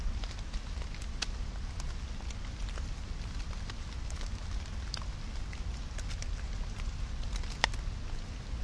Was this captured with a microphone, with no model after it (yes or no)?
yes